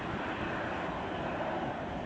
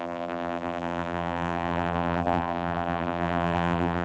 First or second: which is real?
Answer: first